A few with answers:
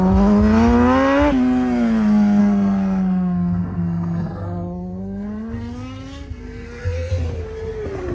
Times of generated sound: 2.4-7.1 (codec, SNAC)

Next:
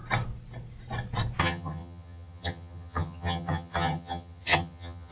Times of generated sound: 1.4-5.1 (vocoder, HiFi-GAN)